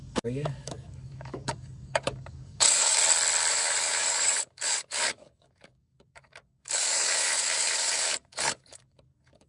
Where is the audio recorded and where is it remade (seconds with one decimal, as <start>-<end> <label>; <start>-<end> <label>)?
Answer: 0.0-3.0 remade; 3.0-3.5 recorded; 3.5-9.5 remade